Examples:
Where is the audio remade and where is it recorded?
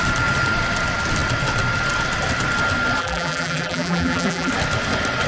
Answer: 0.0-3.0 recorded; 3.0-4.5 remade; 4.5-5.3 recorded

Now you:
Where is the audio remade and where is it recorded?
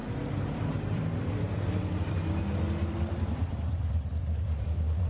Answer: 0.0-2.4 remade; 2.4-2.8 recorded; 2.8-3.7 remade; 3.7-4.2 recorded; 4.2-5.1 remade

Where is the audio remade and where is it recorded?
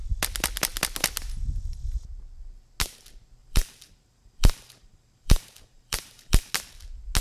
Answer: 0.0-3.4 recorded; 3.4-6.5 remade; 6.5-7.2 recorded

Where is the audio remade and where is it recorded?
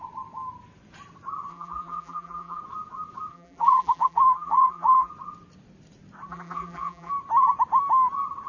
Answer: 0.0-1.5 recorded; 1.5-2.6 remade; 2.6-3.3 recorded; 3.3-5.1 remade; 5.1-6.3 recorded; 6.3-7.1 remade; 7.1-8.5 recorded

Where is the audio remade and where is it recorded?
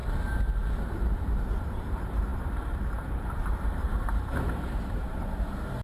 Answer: 0.0-0.7 recorded; 0.7-5.8 remade